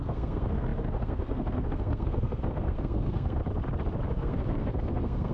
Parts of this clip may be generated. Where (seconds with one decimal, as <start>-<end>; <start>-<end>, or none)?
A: 0.0-3.4; 4.1-5.3